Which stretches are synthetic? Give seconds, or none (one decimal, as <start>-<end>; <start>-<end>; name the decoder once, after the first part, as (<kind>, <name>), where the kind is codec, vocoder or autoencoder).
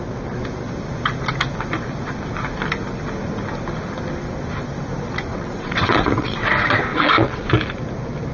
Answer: 5.3-6.5 (vocoder, WaveNeXt); 6.9-7.5